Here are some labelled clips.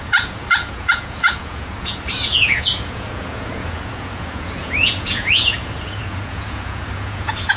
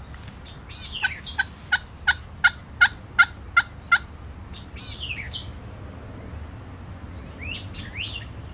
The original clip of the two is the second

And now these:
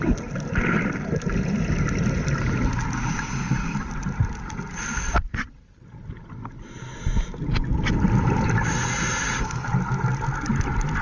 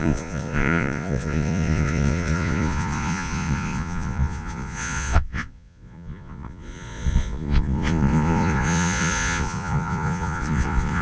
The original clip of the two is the first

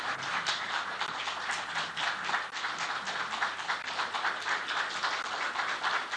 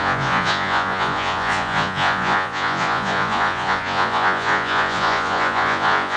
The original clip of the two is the first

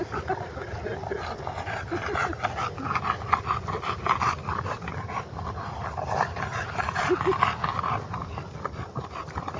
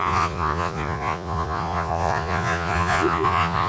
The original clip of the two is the first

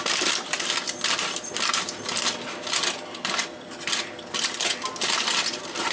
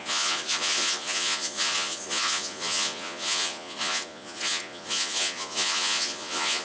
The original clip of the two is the first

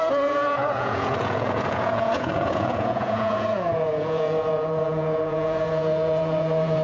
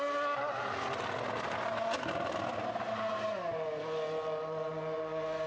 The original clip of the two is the second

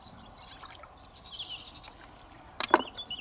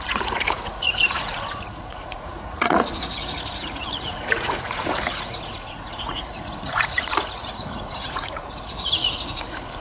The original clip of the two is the first